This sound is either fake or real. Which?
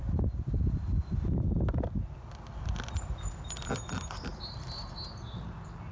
real